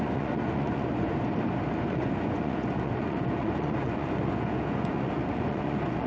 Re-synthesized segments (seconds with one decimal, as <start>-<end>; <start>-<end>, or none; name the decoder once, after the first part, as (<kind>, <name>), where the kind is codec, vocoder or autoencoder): 0.0-1.1 (vocoder, Vocos); 1.9-6.1

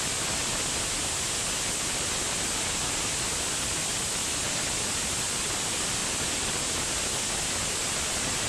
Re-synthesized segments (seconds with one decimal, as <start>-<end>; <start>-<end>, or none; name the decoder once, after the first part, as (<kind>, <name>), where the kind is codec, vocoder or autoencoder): none